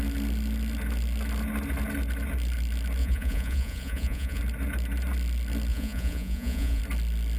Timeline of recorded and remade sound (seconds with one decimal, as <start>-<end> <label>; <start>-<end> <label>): 0.0-3.0 recorded; 3.0-4.4 remade; 4.4-5.7 recorded; 5.7-6.8 remade; 6.8-7.4 recorded